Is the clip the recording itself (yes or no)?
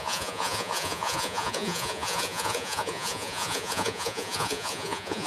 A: no